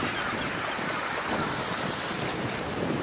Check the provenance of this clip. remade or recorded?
recorded